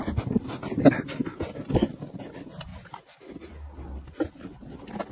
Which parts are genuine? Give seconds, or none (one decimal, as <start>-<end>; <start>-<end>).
0.0-5.1